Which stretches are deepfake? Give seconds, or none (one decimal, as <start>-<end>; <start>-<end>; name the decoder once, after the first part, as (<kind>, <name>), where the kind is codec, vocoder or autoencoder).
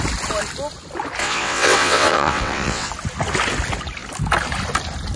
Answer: 1.2-2.9 (vocoder, WaveNeXt)